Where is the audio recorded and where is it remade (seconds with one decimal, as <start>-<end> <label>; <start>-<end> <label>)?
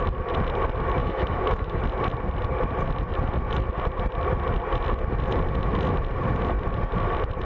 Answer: 0.0-1.0 recorded; 1.0-1.8 remade; 1.8-7.4 recorded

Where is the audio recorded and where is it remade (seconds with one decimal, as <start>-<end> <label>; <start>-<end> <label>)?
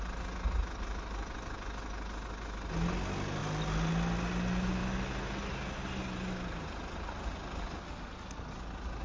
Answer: 0.0-9.0 recorded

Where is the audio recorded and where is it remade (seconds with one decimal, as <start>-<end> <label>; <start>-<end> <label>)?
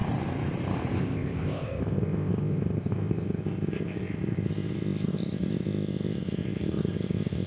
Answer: 0.0-1.0 recorded; 1.0-7.5 remade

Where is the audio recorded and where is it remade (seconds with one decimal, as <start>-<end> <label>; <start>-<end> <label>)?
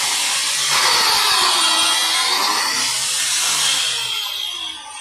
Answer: 0.0-5.0 recorded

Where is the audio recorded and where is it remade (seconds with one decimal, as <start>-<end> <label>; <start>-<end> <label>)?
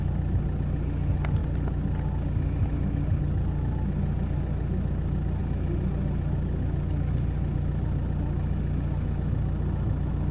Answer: 0.0-10.3 recorded